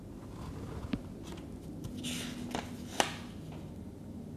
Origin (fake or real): real